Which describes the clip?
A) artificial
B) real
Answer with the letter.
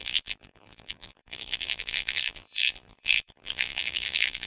A